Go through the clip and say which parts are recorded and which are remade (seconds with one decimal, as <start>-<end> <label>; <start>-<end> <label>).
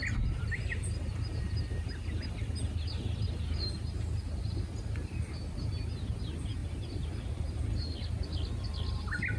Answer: 0.0-0.7 recorded; 0.7-1.8 remade; 1.8-6.6 recorded; 6.6-7.6 remade; 7.6-9.4 recorded